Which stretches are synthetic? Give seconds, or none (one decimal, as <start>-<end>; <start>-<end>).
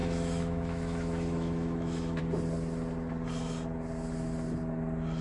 0.0-2.2